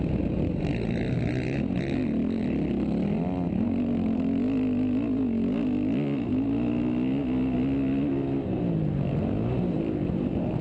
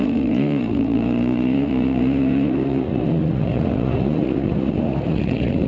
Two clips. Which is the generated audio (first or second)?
second